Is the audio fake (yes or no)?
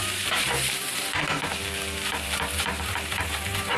yes